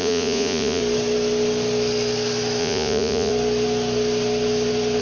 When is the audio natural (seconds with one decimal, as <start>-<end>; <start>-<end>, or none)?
0.8-2.6; 3.3-5.0